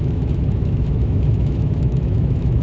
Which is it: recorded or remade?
remade